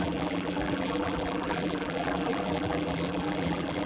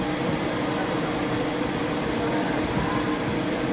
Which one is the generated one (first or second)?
first